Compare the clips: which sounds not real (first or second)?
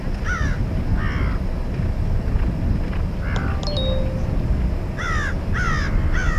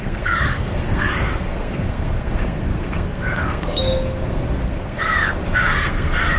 second